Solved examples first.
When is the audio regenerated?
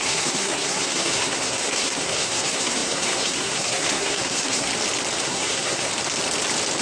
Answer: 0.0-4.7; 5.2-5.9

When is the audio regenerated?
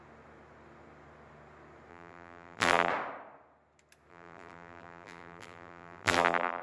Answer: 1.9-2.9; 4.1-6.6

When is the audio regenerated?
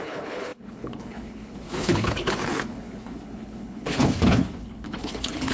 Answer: 0.0-5.5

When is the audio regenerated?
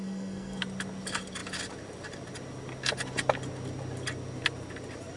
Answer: 0.0-0.6